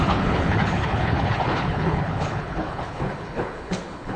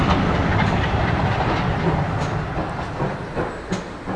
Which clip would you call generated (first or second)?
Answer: first